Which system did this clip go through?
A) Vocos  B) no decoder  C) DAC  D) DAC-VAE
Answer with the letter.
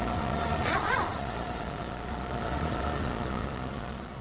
A